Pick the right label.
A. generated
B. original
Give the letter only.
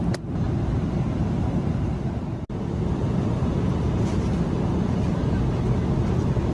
B